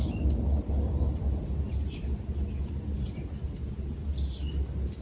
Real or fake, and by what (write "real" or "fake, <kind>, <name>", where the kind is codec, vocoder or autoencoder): real